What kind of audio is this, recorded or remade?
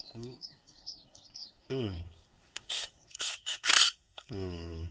remade